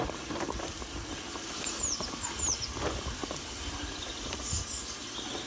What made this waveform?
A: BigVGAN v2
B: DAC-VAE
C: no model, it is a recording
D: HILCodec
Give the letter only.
C